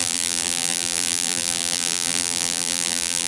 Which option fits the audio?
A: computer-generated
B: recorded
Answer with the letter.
A